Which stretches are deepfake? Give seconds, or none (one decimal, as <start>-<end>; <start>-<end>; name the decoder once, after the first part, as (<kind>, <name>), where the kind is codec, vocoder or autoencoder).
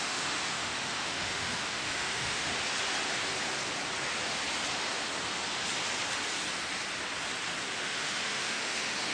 0.0-2.5 (autoencoder, DAC-VAE); 7.8-9.1